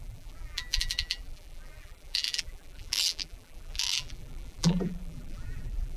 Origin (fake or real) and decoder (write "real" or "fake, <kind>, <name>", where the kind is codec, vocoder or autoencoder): fake, vocoder, BigVGAN v2